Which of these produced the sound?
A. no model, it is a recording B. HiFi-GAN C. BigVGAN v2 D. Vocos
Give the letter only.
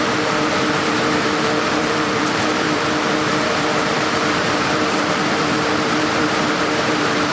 C